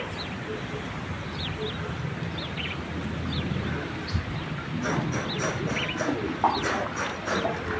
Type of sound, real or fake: real